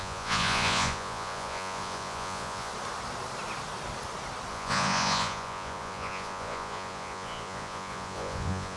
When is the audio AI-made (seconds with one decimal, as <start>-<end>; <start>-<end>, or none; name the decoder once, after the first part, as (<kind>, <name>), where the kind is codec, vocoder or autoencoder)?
0.0-2.7 (vocoder, Vocos); 4.5-8.8